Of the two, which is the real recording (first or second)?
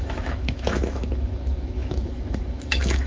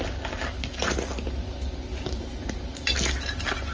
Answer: second